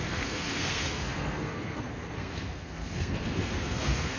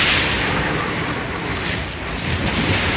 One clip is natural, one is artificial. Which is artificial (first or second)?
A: first